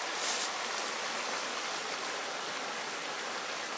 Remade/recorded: recorded